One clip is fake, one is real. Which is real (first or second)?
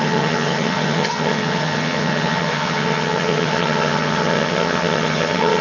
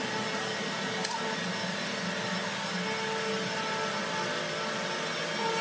second